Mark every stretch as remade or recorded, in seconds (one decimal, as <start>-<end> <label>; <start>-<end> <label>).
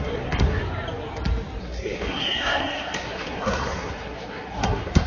0.0-0.6 remade; 0.6-1.6 recorded; 1.6-5.1 remade